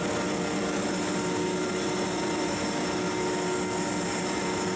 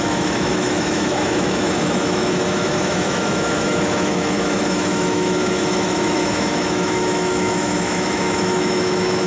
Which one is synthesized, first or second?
second